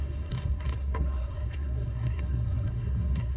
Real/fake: fake